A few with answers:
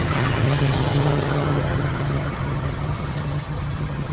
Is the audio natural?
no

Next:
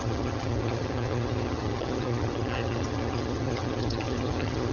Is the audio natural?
no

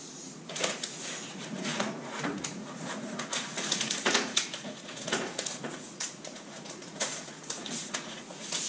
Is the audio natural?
no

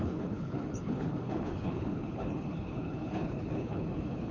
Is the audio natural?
no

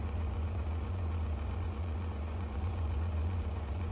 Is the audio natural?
no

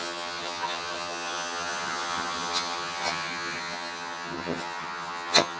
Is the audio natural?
no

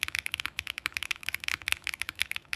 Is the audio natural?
no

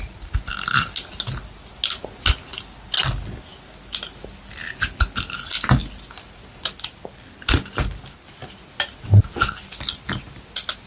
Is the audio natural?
yes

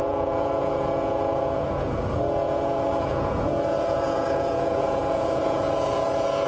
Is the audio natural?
no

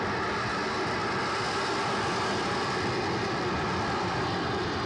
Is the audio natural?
yes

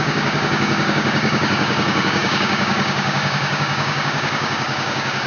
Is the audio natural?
no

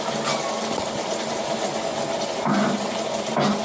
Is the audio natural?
yes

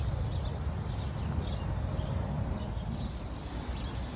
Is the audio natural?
yes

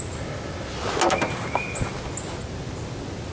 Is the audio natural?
yes